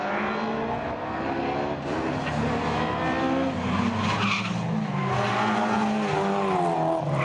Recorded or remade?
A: recorded